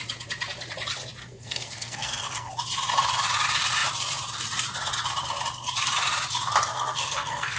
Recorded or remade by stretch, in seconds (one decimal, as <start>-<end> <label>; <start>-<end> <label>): 0.0-1.2 recorded; 1.2-2.5 remade; 2.5-6.7 recorded; 6.7-7.6 remade